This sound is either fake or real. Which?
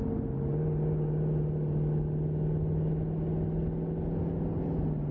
real